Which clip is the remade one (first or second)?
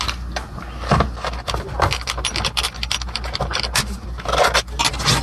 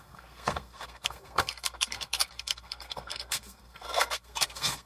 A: second